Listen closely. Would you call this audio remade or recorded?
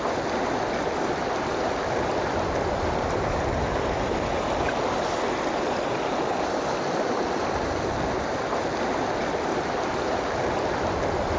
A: recorded